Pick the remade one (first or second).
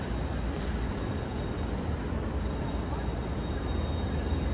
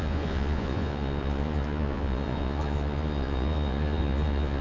second